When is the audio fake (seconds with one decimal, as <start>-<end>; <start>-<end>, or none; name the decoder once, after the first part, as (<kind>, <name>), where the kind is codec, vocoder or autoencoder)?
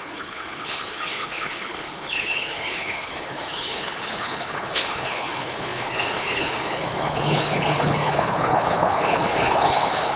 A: 0.0-10.2 (codec, HILCodec)